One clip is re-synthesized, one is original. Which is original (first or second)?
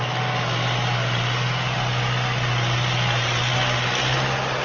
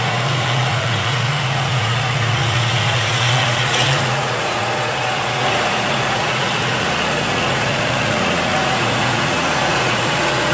first